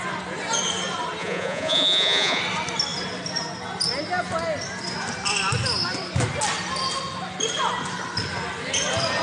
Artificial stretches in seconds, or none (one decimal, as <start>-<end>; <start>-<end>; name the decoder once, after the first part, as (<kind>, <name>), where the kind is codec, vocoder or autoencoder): 1.2-2.4 (vocoder, Vocos)